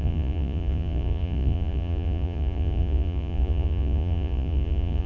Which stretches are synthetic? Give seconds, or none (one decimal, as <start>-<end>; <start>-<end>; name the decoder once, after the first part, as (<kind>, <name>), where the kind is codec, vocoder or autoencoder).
0.0-5.1 (vocoder, Vocos)